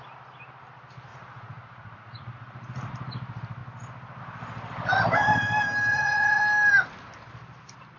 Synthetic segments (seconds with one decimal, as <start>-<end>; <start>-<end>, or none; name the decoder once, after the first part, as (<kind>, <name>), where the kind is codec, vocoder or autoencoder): 1.1-2.9 (vocoder, Vocos); 5.9-6.4

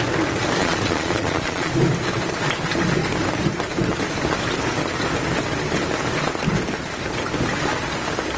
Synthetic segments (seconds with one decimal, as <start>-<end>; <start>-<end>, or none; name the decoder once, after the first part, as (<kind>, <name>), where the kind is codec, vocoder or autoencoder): 0.6-1.7 (vocoder, Vocos)

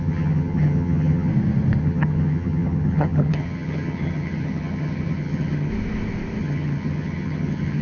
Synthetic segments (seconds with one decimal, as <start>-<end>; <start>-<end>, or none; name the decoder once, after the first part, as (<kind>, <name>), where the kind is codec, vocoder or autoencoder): 0.0-1.3 (vocoder, HiFi-GAN); 1.8-5.7; 6.4-7.8

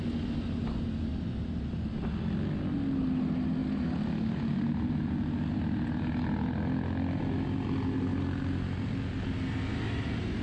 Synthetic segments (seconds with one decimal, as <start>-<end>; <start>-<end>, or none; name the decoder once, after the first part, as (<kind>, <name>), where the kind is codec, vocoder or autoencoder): none